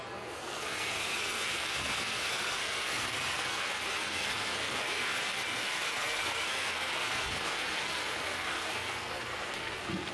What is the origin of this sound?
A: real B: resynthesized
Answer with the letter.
B